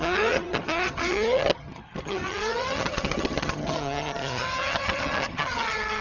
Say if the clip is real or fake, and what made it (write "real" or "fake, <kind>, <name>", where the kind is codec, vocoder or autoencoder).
fake, vocoder, HiFi-GAN